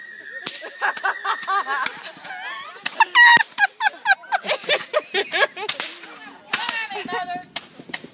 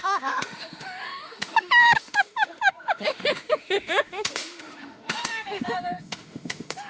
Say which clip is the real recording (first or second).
first